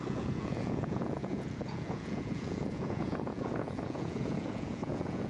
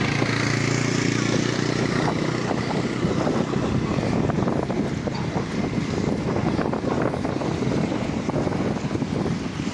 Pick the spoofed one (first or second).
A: first